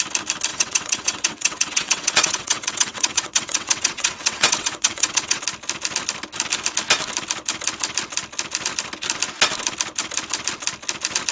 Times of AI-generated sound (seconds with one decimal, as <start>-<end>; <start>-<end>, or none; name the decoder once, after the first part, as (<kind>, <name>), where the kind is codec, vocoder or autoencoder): 0.5-5.4 (vocoder, WaveNeXt)